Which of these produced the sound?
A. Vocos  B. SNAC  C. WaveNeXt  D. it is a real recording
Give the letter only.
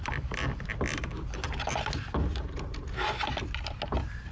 D